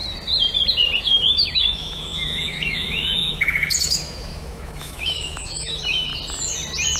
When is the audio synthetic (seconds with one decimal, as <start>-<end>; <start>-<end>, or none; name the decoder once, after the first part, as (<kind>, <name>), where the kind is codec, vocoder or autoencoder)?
1.0-6.1 (autoencoder, DAC-VAE)